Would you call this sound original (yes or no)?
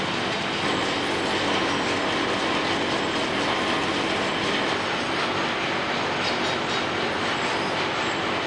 yes